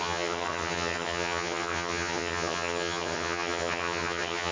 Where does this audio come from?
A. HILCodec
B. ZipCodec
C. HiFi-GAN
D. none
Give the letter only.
C